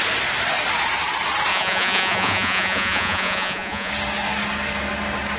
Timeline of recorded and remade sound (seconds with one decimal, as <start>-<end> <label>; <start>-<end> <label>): 0.0-1.5 recorded; 1.5-3.9 remade; 3.9-5.4 recorded